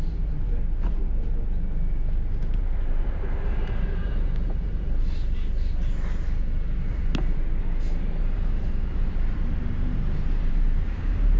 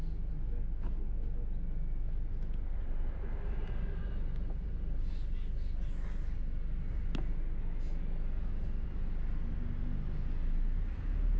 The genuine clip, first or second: second